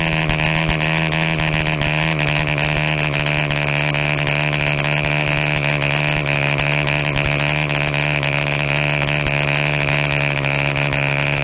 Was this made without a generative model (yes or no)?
no